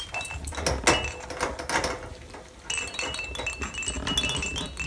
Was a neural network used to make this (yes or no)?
no